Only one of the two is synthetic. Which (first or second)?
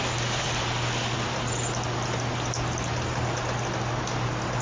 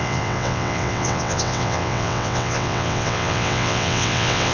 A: second